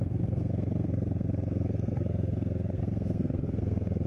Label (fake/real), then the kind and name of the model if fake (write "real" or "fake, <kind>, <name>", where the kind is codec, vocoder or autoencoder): fake, codec, SNAC